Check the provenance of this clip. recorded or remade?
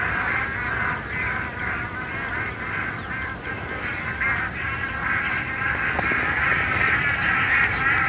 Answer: remade